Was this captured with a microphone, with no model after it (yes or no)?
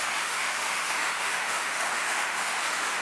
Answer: no